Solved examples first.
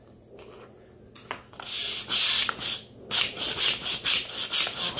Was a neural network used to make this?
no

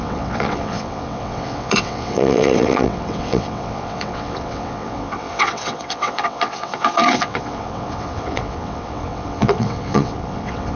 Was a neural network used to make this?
yes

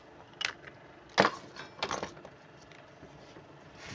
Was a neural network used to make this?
no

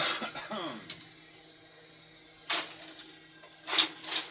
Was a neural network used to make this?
no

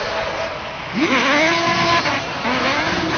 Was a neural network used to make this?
no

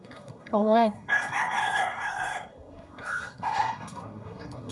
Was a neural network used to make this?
yes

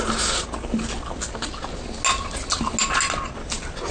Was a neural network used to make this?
no